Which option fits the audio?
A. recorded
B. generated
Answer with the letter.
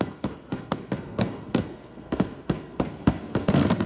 B